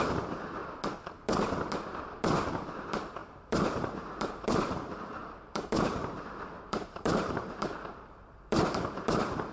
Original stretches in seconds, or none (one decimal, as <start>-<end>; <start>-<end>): 0.6-2.7